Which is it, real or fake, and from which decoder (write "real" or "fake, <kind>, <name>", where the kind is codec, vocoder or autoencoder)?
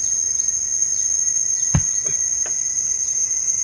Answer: real